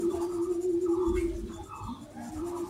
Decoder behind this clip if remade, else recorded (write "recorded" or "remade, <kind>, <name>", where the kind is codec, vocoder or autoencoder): recorded